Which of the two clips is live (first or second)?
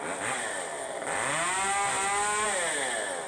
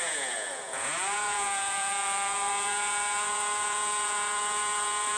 first